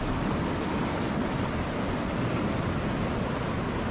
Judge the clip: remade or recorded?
recorded